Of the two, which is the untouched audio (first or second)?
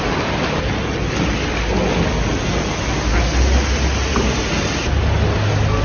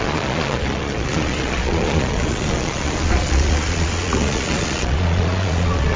first